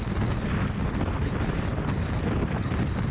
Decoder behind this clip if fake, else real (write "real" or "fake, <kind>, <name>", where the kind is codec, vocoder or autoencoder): real